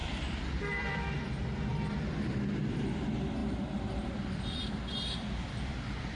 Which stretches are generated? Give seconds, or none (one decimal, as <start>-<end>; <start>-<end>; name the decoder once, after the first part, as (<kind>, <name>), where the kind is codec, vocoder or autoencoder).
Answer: 0.0-1.7 (vocoder, BigVGAN v2); 2.6-3.4; 4.1-6.2